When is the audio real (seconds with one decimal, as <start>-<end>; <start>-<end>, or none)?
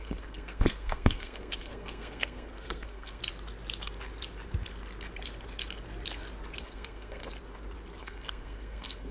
3.2-6.6; 7.2-8.0